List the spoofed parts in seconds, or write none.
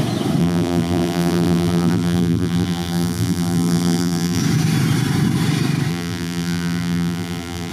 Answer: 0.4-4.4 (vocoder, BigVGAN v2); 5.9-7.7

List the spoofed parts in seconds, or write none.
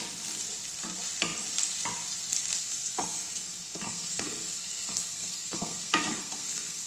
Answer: 2.6-6.9 (codec, SNAC)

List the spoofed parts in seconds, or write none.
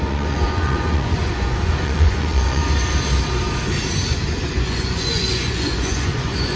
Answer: 0.0-2.6 (vocoder, Vocos); 4.5-6.6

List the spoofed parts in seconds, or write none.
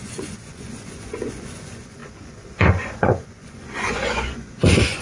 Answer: 0.0-5.0 (vocoder, Vocos)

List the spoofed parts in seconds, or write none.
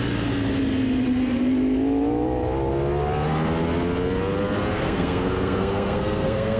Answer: 4.7-6.6 (codec, SNAC)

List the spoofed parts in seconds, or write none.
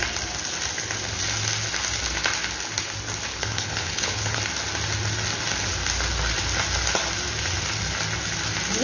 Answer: 3.3-4.4 (codec, HILCodec)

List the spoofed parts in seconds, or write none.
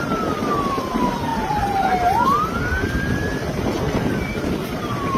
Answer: 0.0-5.2 (vocoder, BigVGAN v2)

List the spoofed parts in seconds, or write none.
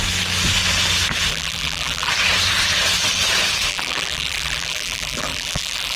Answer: 1.3-2.1 (vocoder, BigVGAN v2); 3.7-6.0